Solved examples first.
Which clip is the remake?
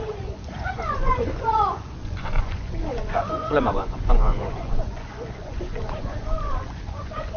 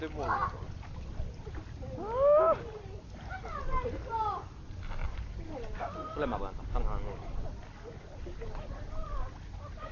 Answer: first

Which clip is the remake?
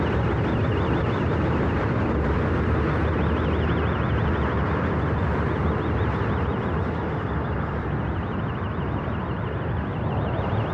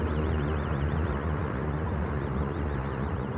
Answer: second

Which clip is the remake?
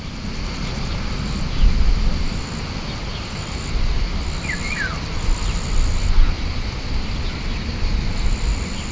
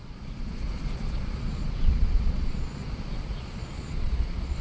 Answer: second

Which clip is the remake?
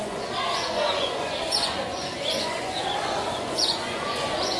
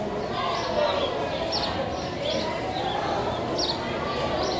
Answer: first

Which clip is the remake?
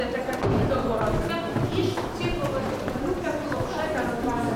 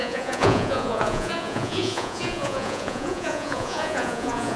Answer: second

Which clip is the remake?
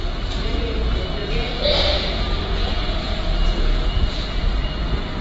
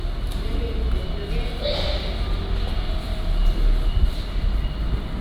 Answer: first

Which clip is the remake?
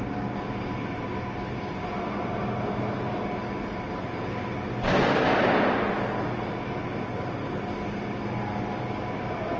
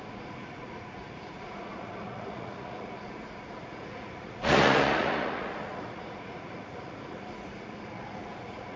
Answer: second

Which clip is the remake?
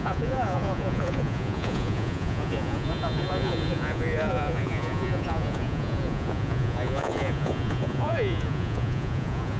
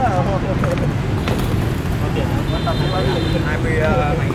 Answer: first